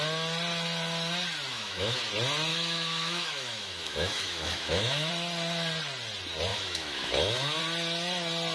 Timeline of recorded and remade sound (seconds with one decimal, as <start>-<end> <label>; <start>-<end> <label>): 0.0-1.5 recorded; 1.5-2.0 remade; 2.0-2.5 recorded; 2.5-5.1 remade; 5.1-6.5 recorded; 6.5-7.6 remade; 7.6-8.5 recorded